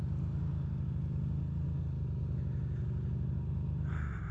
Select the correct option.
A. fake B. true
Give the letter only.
B